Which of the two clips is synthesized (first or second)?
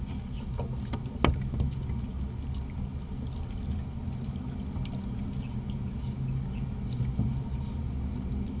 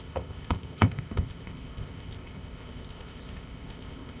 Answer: second